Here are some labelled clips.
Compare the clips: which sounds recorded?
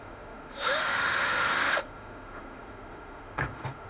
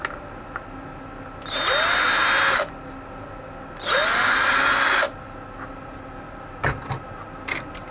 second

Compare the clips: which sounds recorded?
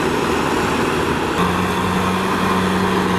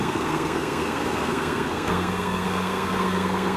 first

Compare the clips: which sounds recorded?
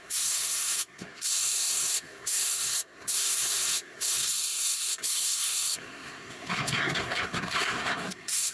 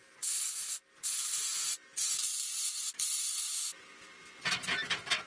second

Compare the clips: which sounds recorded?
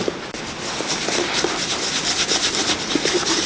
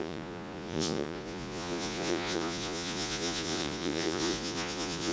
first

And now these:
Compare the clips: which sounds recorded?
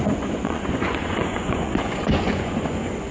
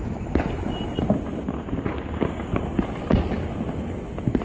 second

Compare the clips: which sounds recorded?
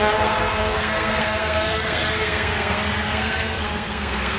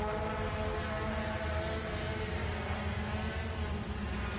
second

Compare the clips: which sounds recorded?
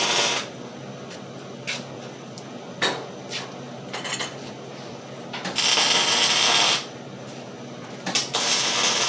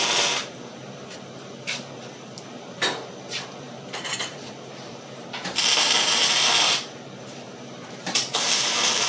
first